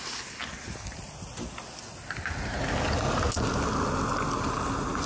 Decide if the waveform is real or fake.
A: real